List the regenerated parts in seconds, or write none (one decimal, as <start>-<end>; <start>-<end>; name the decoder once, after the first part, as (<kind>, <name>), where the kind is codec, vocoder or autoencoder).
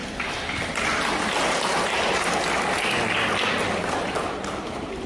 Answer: none